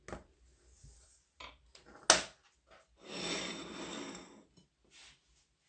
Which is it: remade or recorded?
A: recorded